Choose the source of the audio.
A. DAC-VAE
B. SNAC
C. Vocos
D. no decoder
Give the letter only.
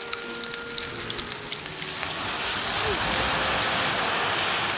D